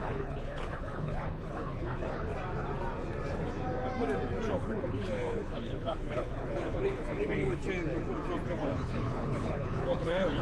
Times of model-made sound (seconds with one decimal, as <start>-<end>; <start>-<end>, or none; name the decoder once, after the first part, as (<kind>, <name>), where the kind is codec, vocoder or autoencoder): 0.0-2.3 (codec, HILCodec); 4.5-7.6; 8.5-10.4